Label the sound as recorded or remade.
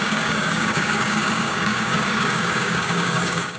remade